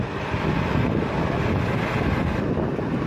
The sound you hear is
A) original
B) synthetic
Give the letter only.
A